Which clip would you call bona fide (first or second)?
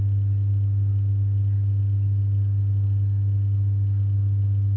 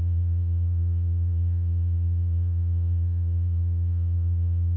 first